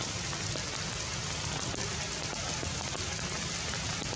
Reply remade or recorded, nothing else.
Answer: recorded